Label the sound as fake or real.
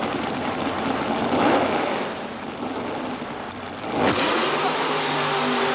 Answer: real